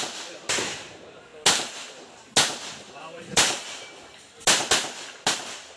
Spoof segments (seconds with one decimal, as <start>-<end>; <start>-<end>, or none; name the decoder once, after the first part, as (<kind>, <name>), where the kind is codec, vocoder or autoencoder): 0.0-1.3 (vocoder, BigVGAN v2); 2.9-3.6